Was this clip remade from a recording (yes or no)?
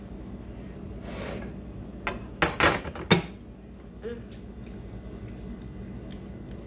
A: no